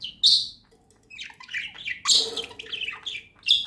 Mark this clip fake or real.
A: real